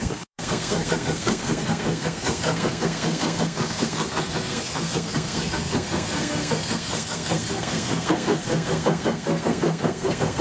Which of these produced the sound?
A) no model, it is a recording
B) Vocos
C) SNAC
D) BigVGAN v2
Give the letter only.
C